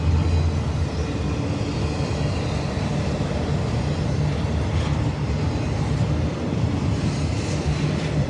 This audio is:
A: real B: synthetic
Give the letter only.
A